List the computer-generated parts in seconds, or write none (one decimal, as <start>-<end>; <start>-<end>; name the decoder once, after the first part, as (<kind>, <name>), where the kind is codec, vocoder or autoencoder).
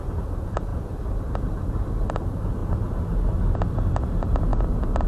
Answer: 0.7-2.1 (vocoder, BigVGAN v2)